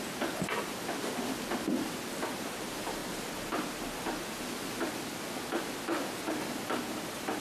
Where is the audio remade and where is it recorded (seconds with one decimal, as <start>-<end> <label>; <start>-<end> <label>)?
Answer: 0.0-7.4 recorded